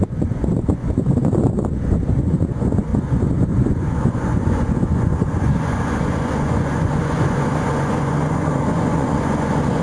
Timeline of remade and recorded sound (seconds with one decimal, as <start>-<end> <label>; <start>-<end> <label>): 0.0-9.8 remade